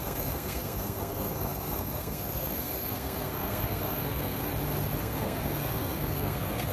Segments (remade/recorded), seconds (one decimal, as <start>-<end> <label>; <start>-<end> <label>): 0.0-4.5 remade; 4.5-5.0 recorded; 5.0-6.7 remade